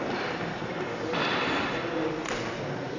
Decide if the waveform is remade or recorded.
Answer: recorded